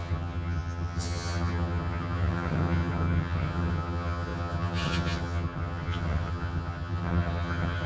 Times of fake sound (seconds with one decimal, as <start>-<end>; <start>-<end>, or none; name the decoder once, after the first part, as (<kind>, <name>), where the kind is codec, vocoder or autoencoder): 0.0-7.9 (vocoder, HiFi-GAN)